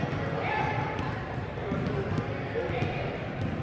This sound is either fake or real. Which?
real